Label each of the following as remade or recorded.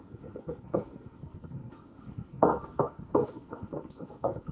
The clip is remade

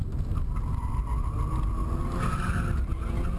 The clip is recorded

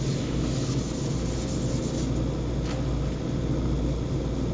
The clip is recorded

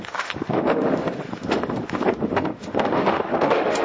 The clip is remade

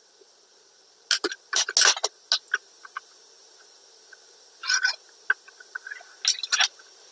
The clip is recorded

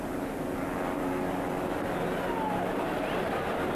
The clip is recorded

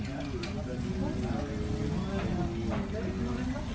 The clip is recorded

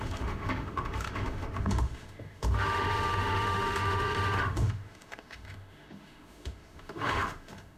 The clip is remade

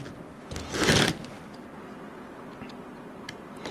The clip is recorded